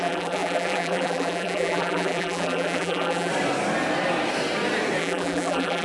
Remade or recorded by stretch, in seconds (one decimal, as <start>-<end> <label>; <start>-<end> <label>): 0.0-3.3 remade; 3.3-5.0 recorded; 5.0-5.8 remade